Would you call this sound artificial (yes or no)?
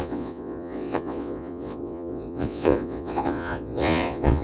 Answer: yes